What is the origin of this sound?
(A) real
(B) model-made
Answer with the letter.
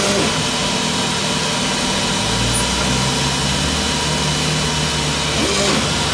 A